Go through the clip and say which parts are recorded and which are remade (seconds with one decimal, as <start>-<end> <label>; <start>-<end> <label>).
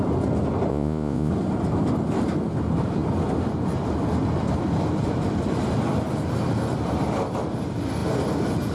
0.0-0.7 recorded; 0.7-1.3 remade; 1.3-8.7 recorded